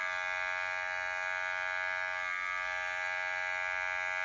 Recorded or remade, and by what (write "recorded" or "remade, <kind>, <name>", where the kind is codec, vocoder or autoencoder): recorded